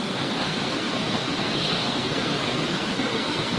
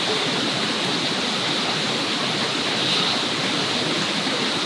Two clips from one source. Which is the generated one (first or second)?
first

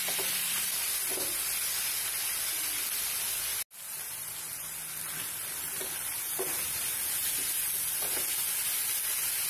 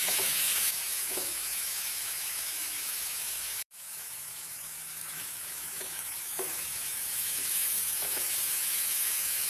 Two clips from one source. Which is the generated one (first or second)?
second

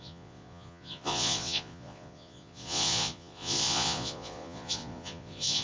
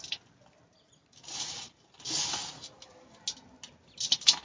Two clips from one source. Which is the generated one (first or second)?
first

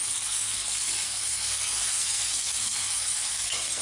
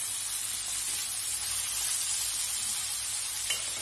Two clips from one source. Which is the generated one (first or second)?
first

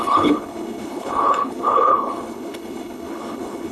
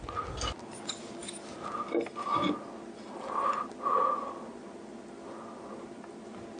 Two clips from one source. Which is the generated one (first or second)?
first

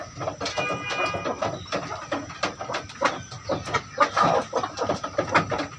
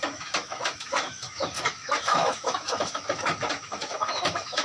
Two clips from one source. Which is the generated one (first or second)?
second